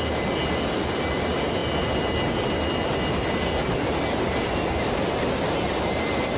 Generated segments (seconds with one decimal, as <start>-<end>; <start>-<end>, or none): none